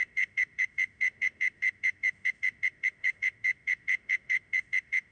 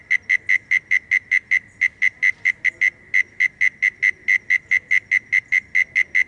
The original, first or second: second